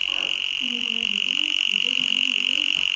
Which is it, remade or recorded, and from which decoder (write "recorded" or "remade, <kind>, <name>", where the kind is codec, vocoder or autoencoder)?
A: recorded